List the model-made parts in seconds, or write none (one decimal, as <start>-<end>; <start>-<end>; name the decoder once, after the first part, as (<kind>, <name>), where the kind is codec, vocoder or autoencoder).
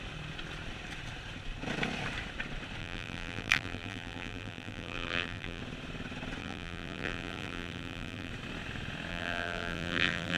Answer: 2.8-5.6 (vocoder, BigVGAN v2); 6.4-8.3; 9.1-10.4